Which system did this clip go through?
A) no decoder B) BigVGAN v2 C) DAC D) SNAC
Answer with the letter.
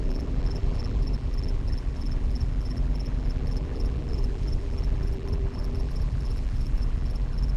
B